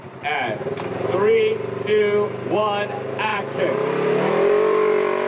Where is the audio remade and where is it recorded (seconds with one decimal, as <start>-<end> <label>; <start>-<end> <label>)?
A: 0.0-3.3 recorded; 3.3-5.3 remade